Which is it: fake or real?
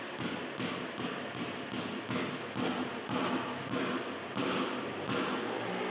real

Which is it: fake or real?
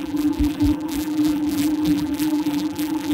fake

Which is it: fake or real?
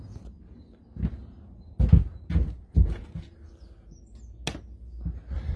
real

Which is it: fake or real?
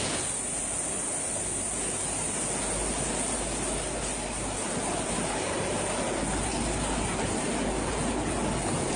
real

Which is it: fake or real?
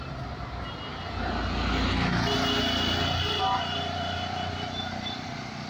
real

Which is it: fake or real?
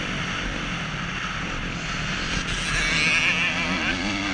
real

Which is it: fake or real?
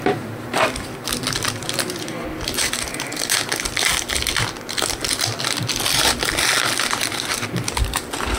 real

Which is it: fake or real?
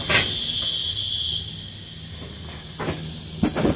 real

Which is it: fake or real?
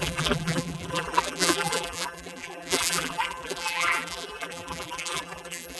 fake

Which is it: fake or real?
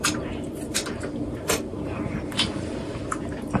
fake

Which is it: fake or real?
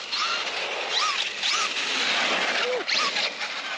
real